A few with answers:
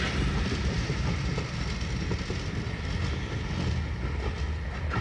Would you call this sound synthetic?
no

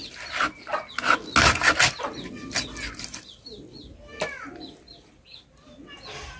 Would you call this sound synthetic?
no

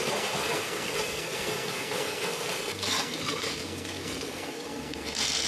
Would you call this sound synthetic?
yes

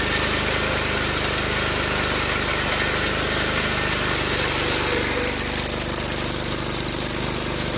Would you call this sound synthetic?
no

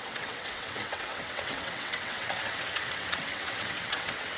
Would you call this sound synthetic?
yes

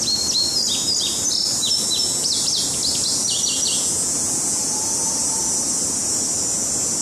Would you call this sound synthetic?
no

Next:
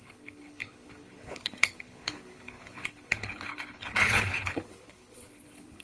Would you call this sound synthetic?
yes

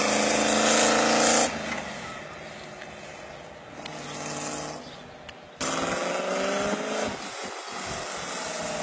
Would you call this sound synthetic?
no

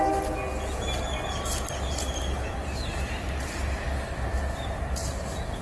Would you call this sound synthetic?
no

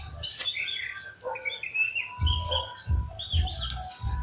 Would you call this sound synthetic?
no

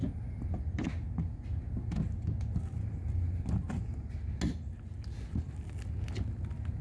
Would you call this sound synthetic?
no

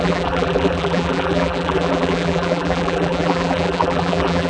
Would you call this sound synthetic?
yes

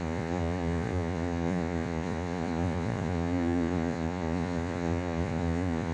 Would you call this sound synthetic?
yes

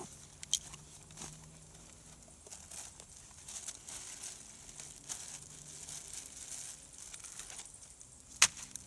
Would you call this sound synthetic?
no